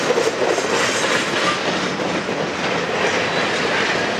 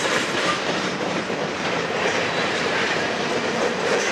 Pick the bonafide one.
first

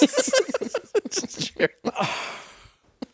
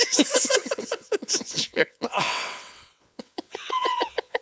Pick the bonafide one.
first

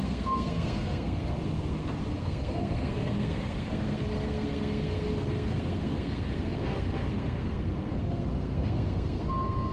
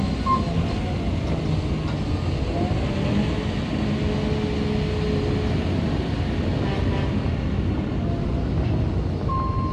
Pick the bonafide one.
second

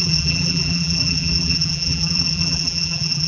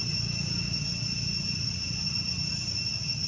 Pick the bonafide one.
second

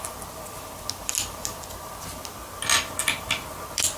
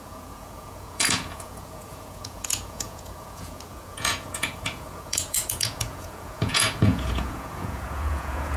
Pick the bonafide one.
first